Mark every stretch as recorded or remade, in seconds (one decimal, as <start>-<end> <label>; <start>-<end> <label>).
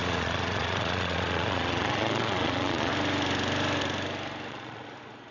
0.0-2.9 remade; 2.9-4.5 recorded; 4.5-5.3 remade